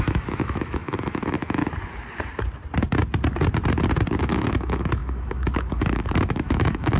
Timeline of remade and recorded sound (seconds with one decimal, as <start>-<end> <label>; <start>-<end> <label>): 0.0-1.6 remade; 1.6-4.2 recorded; 4.2-7.0 remade